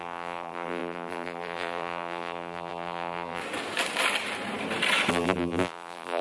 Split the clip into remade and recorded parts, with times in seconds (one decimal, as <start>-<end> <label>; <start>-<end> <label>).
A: 0.0-3.4 remade; 3.4-5.1 recorded; 5.1-6.2 remade